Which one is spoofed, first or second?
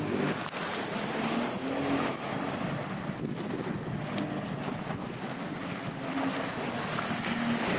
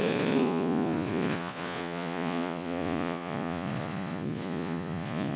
second